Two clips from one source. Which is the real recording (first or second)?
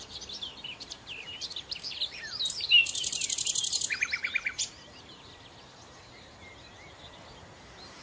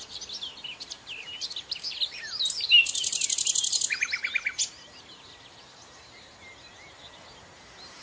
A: second